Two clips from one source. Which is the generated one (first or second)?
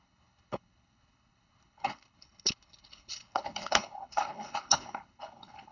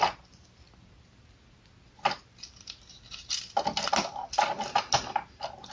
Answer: first